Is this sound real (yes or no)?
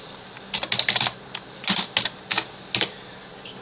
yes